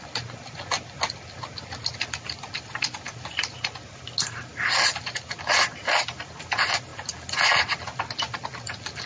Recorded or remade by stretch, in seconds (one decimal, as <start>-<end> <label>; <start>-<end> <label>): 0.0-9.1 recorded